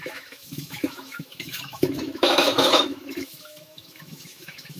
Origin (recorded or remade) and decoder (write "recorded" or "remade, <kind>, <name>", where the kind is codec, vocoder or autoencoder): remade, autoencoder, DAC-VAE